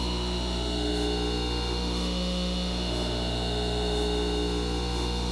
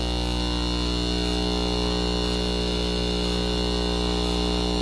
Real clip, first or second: second